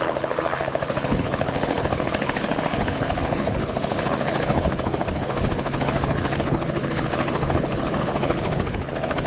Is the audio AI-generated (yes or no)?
yes